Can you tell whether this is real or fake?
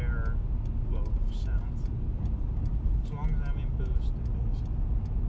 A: real